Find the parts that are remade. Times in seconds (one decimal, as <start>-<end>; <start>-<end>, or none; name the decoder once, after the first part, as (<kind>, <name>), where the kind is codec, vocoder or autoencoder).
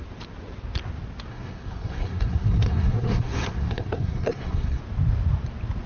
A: 1.3-4.8 (codec, SNAC)